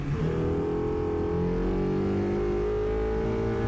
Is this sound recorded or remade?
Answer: recorded